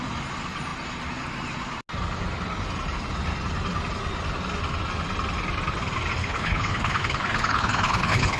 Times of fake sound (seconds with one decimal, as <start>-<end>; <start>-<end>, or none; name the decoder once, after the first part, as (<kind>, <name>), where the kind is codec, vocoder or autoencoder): 6.2-8.4 (codec, HILCodec)